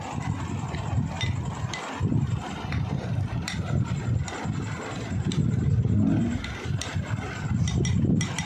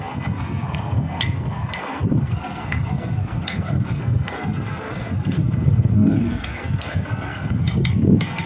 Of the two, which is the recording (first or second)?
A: first